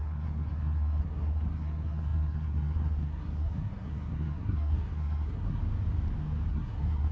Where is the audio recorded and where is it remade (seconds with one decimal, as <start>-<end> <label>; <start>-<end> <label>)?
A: 0.0-5.6 remade; 5.6-6.5 recorded; 6.5-7.1 remade